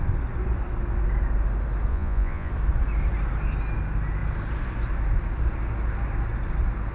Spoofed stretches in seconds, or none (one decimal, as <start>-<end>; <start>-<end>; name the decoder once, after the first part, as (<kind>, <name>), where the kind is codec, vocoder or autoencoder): 1.9-2.5 (vocoder, Vocos)